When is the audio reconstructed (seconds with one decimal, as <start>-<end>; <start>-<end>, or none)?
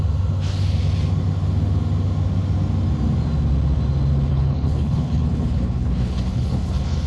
4.3-7.1